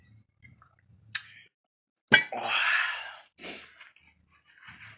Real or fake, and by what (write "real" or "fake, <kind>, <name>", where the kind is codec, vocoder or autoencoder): real